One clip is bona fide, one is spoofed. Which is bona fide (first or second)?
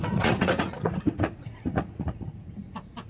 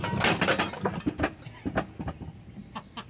second